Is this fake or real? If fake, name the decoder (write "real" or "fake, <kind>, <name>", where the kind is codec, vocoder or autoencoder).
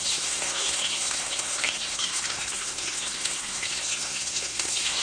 fake, codec, SNAC